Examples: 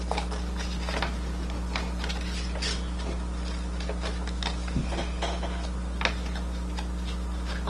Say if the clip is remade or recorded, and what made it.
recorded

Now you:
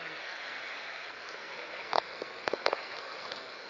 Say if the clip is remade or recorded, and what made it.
remade, codec, SNAC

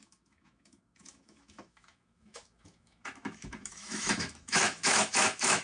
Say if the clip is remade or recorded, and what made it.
remade, autoencoder, DAC-VAE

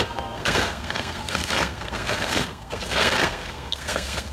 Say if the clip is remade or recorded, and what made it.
remade, codec, SNAC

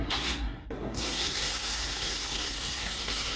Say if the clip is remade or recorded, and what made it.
remade, codec, SNAC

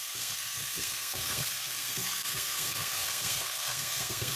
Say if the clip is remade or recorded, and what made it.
remade, codec, SNAC